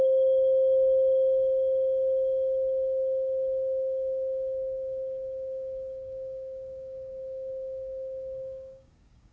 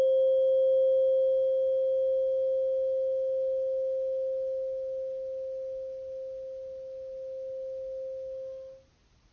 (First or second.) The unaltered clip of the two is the second